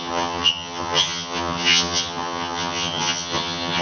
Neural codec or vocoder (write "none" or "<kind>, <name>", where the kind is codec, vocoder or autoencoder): vocoder, HiFi-GAN